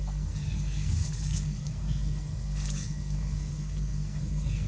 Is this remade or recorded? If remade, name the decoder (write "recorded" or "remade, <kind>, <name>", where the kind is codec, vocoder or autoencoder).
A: remade, codec, SNAC